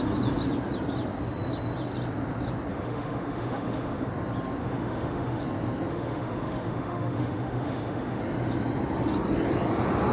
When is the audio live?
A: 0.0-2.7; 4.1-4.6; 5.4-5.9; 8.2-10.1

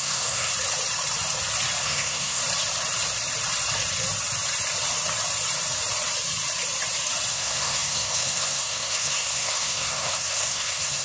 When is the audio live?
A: 0.5-1.8; 2.4-7.3

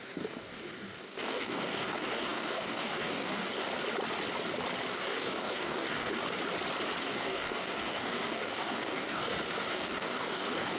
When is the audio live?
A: 3.7-4.9; 6.2-7.0

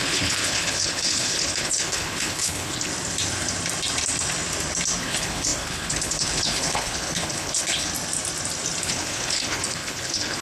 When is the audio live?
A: 2.9-5.0; 7.9-8.8

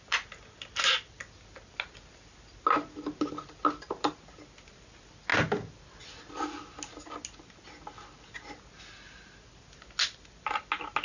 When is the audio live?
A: 0.0-11.0

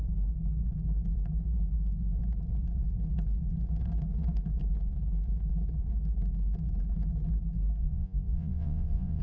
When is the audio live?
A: 0.0-7.8